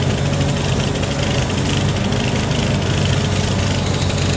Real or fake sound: real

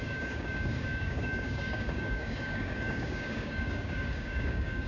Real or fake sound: fake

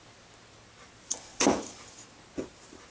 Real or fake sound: real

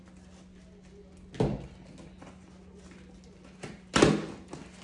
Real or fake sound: real